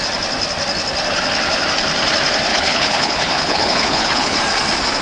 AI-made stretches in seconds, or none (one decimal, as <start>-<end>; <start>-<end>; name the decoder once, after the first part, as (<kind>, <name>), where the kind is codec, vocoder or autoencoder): 2.5-4.4 (codec, HILCodec)